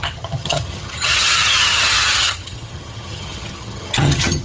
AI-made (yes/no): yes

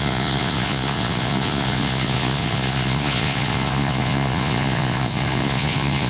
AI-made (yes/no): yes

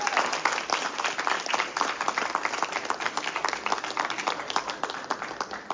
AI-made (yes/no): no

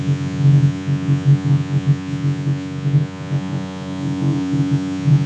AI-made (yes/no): yes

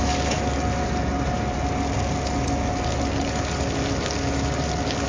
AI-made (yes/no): no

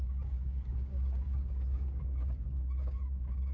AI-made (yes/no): yes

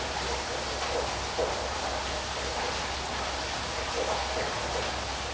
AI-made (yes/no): no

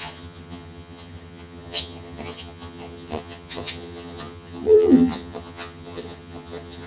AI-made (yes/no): yes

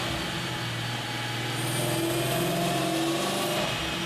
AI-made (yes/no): no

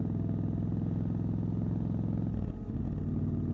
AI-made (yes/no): no